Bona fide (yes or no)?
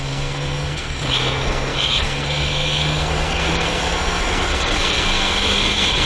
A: no